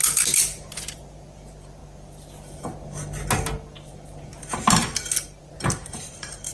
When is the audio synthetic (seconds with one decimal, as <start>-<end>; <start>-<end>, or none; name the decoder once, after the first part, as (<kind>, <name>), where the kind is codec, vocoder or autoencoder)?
0.0-1.8 (vocoder, BigVGAN v2); 5.4-6.5